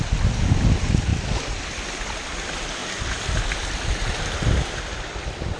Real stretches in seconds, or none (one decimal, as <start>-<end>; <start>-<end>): 0.0-5.6